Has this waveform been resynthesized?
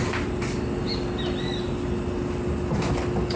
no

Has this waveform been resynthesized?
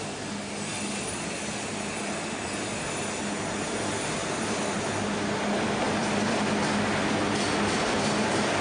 no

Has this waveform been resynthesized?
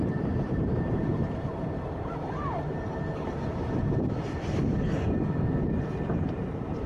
yes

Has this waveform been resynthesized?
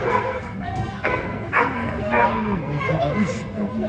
yes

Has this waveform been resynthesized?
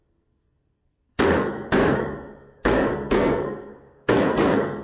yes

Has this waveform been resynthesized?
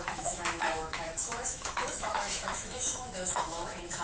yes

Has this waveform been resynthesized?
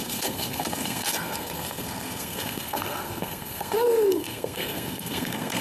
yes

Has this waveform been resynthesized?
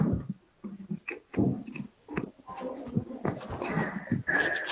no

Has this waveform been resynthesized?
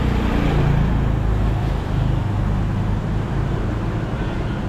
no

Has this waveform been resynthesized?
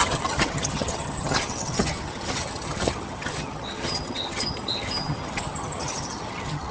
yes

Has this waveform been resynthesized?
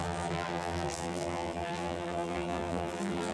yes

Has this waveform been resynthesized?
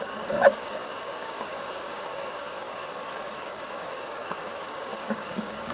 yes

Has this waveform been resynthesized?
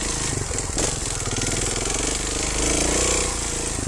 no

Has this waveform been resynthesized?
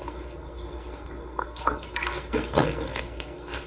yes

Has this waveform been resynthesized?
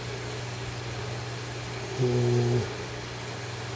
no